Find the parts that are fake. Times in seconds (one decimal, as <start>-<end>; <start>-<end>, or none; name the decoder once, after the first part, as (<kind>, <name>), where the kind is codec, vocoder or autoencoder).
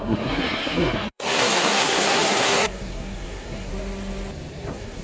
0.0-3.7 (codec, SNAC); 4.5-5.0